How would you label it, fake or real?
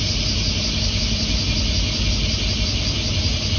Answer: real